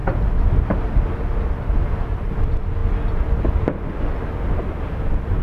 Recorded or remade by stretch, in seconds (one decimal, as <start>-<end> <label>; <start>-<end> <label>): 0.0-5.4 recorded